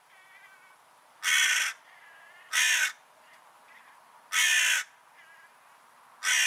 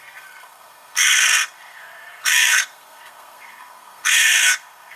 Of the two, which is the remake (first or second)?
second